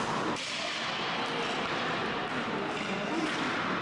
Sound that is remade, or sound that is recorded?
recorded